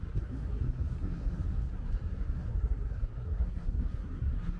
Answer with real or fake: fake